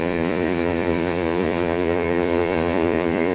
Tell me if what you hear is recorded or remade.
remade